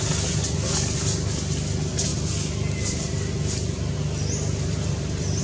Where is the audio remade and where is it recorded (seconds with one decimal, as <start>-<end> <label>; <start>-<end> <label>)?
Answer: 0.0-5.4 recorded